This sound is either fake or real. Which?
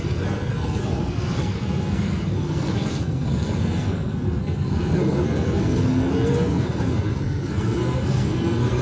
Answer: fake